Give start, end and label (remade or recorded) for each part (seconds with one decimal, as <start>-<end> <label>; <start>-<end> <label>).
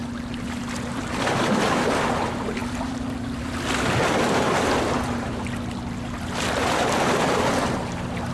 0.0-8.3 recorded